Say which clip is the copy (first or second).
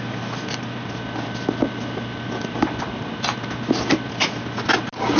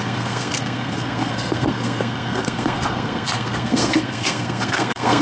second